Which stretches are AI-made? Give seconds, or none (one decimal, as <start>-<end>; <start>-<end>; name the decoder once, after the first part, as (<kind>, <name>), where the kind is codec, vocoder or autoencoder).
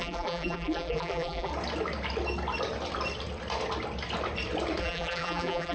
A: 0.0-1.5 (vocoder, BigVGAN v2); 4.8-5.7